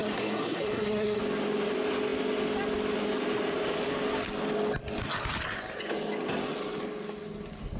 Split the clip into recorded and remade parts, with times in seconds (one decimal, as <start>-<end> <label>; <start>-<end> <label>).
0.0-1.2 remade; 1.2-7.8 recorded